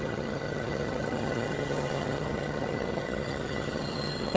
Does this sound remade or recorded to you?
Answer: remade